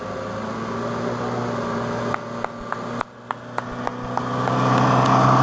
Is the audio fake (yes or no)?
no